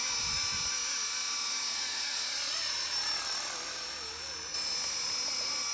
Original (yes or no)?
yes